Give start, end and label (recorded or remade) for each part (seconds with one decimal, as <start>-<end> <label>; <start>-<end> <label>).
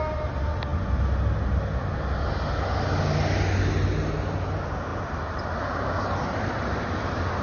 0.0-7.4 recorded